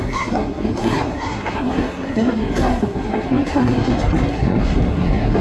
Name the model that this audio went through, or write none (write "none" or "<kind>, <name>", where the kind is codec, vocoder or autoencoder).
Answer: codec, SNAC